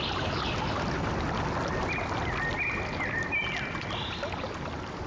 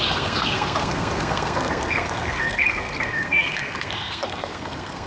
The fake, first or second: second